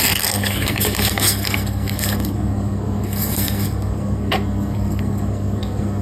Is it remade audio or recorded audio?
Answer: remade